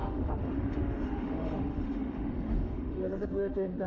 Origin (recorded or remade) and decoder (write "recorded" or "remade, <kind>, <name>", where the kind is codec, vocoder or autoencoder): remade, autoencoder, DAC-VAE